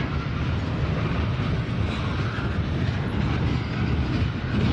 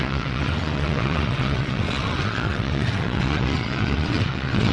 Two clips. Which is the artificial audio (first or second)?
second